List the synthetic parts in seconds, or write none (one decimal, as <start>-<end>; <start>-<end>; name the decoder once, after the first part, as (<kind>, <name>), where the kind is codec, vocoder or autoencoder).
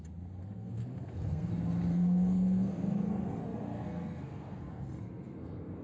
0.4-1.5 (codec, SNAC); 1.9-5.8